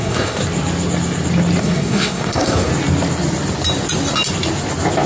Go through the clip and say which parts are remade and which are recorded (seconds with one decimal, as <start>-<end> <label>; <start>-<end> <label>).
0.0-0.4 remade; 0.4-1.6 recorded; 1.6-2.7 remade; 2.7-5.1 recorded